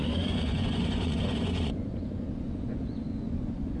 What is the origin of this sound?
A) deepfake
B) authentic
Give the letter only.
A